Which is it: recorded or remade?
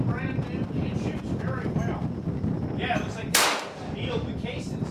remade